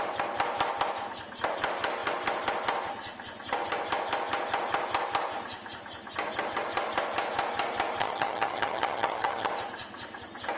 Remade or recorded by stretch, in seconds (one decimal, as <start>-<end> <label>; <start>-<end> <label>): 0.0-8.0 recorded; 8.0-9.5 remade; 9.5-10.6 recorded